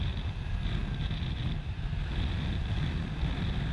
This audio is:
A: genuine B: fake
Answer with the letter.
A